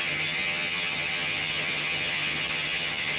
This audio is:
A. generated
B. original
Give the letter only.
A